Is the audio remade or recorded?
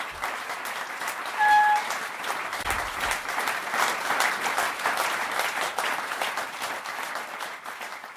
recorded